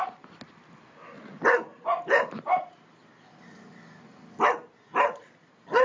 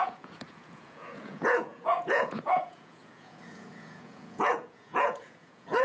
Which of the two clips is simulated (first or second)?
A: second